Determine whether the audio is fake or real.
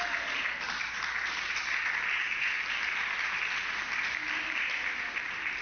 real